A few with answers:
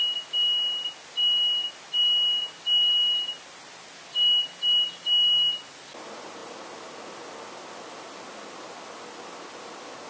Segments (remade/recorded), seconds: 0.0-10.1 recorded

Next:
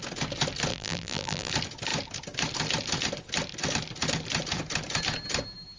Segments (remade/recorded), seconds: 0.0-0.7 recorded; 0.7-1.5 remade; 1.5-5.8 recorded